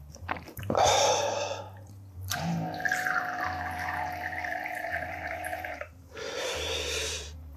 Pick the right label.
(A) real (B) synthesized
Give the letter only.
B